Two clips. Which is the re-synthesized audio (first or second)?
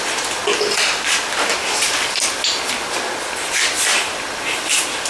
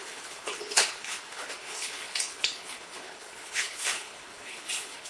second